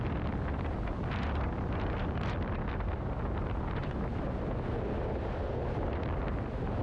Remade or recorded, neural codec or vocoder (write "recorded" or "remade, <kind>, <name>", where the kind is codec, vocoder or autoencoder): recorded